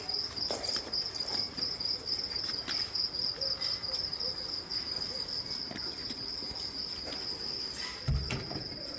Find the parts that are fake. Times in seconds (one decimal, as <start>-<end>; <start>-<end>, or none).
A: none